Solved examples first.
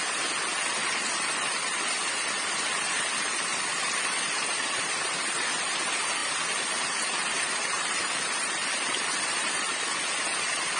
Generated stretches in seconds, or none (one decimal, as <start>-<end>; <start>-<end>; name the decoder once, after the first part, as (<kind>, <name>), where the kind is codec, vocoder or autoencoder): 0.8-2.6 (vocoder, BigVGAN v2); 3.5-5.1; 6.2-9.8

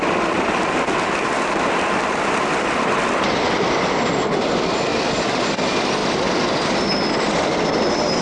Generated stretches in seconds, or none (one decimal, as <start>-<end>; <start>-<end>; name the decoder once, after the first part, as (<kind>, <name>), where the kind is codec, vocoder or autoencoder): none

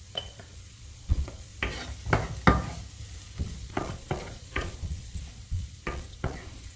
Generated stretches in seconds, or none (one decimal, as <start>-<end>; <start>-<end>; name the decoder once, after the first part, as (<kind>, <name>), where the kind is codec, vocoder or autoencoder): 0.0-1.5 (vocoder, Vocos); 3.4-6.8

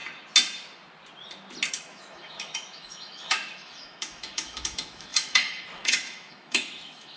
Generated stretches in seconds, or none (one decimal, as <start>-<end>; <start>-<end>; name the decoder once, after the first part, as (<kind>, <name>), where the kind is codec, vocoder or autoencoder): 1.7-7.2 (autoencoder, DAC-VAE)

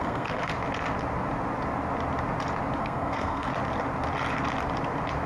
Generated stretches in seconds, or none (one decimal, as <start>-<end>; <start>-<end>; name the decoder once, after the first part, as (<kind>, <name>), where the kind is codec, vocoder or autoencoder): 0.0-0.5 (codec, SNAC); 2.8-3.5

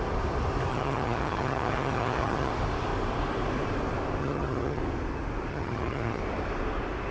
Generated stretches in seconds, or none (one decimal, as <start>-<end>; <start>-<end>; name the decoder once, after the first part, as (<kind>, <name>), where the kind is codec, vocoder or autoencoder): 0.7-2.5 (vocoder, HiFi-GAN); 4.2-4.8; 5.5-6.2

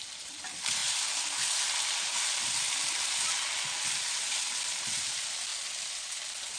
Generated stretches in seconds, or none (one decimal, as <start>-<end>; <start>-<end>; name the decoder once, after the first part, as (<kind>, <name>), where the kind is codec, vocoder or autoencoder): none

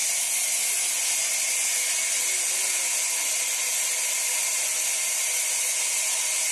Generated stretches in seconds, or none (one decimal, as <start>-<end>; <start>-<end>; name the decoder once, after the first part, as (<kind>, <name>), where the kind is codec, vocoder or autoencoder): none